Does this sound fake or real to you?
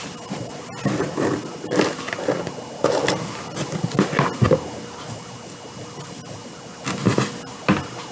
real